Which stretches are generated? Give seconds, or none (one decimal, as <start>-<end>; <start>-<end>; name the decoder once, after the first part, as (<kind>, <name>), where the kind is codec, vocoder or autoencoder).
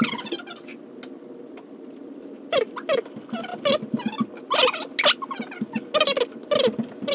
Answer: none